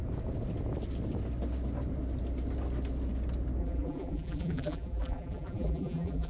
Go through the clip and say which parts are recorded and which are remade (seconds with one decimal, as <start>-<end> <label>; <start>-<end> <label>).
0.0-3.6 recorded; 3.6-6.3 remade